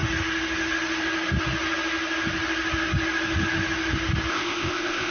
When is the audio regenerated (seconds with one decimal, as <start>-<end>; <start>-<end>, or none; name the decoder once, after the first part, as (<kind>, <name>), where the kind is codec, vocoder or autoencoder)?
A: 4.3-5.1 (codec, ZipCodec)

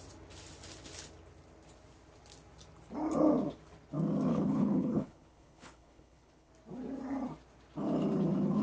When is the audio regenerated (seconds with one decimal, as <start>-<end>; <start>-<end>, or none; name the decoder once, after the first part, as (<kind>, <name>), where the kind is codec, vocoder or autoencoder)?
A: 4.3-6.5 (codec, HILCodec)

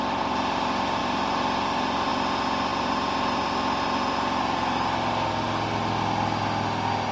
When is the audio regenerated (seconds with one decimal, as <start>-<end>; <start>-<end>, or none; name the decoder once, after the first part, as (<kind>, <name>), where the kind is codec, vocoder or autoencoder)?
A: none

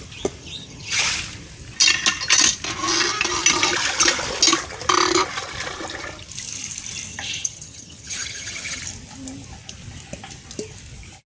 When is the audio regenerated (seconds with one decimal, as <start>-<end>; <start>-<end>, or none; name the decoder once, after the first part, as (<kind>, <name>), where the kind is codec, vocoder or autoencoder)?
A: 0.4-1.0 (vocoder, HiFi-GAN); 7.1-8.8